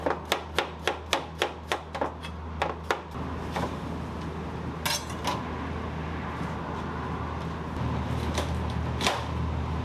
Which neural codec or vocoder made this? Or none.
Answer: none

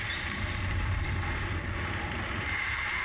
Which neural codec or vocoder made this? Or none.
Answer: vocoder, BigVGAN v2